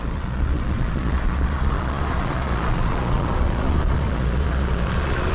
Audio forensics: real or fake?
fake